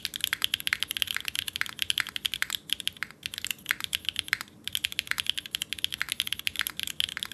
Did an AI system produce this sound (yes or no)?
no